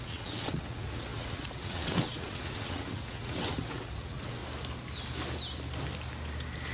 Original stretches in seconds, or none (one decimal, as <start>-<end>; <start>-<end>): 4.4-6.7